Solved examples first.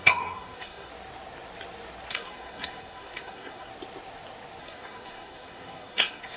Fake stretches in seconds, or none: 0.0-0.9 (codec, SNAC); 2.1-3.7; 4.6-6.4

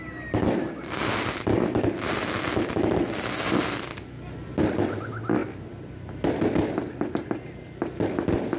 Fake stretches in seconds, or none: none

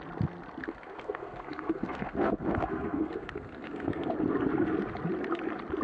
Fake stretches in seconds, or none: 0.6-4.1 (codec, SNAC)

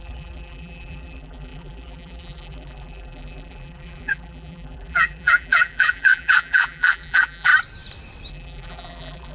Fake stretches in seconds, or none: 0.0-7.5 (vocoder, BigVGAN v2); 8.3-9.3

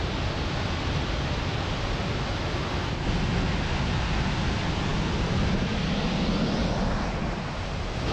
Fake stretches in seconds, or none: none

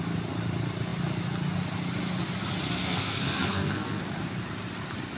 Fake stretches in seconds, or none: 2.8-4.0 (codec, SNAC)